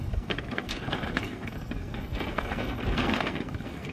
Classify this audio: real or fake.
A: fake